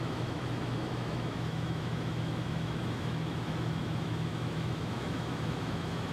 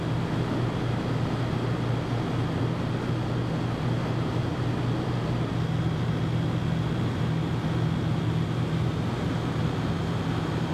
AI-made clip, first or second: first